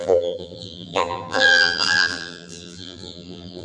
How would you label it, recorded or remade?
remade